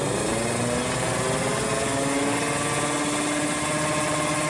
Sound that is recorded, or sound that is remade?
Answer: recorded